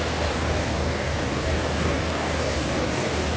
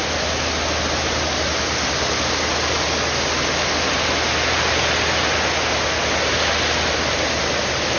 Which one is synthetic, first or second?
first